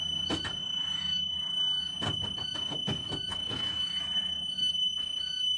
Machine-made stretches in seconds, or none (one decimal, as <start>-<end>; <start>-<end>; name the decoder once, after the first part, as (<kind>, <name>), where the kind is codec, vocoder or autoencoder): 0.6-1.8 (autoencoder, DAC-VAE); 3.3-4.7

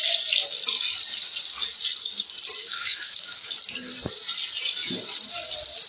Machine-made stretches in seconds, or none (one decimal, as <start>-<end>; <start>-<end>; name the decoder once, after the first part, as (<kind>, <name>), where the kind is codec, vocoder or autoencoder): 2.6-3.5 (autoencoder, DAC-VAE)